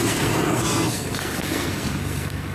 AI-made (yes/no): yes